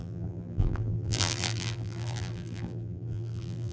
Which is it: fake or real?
fake